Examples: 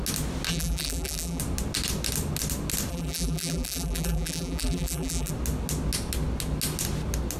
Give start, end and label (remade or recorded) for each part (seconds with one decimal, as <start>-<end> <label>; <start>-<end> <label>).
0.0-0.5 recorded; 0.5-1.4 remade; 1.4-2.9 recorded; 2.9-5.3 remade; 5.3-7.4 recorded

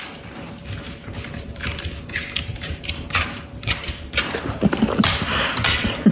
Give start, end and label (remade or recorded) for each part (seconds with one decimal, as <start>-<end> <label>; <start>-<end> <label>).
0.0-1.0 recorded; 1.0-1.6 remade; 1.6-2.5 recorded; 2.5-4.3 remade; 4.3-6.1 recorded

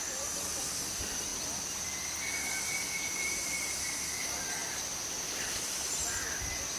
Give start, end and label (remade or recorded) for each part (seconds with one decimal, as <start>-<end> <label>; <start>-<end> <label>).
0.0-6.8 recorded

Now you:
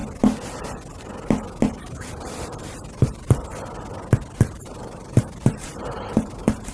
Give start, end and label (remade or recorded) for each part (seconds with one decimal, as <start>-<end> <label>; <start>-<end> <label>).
0.0-1.7 recorded; 1.7-3.5 remade; 3.5-4.5 recorded; 4.5-6.7 remade